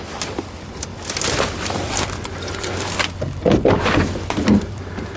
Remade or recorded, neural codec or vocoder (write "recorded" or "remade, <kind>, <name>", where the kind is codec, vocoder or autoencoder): remade, vocoder, BigVGAN v2